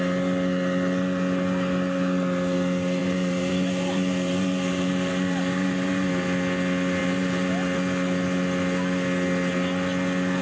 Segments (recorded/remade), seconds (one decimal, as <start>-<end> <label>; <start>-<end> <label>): 0.0-3.0 recorded; 3.0-6.1 remade; 6.1-7.0 recorded; 7.0-7.5 remade; 7.5-10.4 recorded

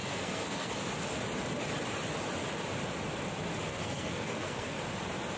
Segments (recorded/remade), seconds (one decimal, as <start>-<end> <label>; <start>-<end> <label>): 0.0-0.7 remade; 0.7-3.7 recorded; 3.7-4.8 remade; 4.8-5.4 recorded

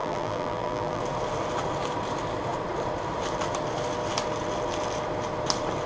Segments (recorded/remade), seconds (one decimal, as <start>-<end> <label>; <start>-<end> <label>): 0.0-1.0 remade; 1.0-5.9 recorded

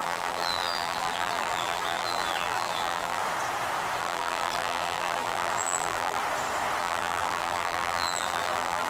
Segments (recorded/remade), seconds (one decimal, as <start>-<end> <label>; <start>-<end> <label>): 0.0-3.2 remade; 3.2-4.0 recorded; 4.0-6.2 remade; 6.2-6.8 recorded; 6.8-8.9 remade

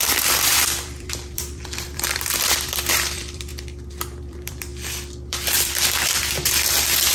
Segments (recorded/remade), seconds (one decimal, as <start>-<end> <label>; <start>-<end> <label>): 0.0-3.5 remade; 3.5-4.2 recorded; 4.2-4.7 remade; 4.7-5.3 recorded; 5.3-7.1 remade